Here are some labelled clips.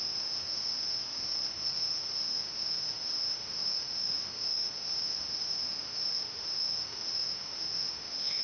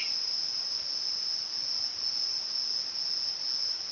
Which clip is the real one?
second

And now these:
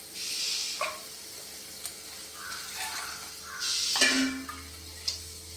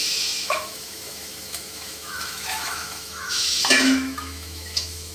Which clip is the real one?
first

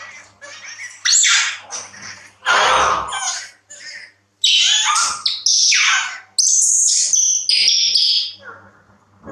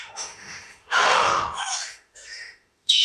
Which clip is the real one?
first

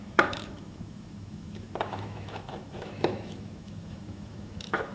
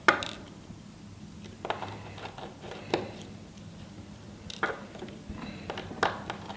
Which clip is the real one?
second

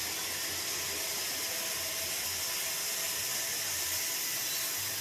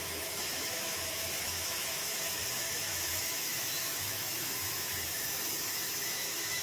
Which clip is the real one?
first